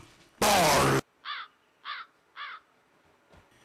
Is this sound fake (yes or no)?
no